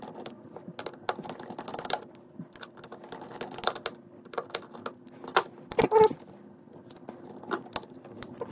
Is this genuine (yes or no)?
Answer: yes